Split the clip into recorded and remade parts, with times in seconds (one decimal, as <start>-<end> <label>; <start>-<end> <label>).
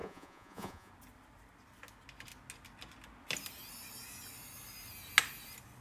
0.0-0.9 remade; 0.9-5.8 recorded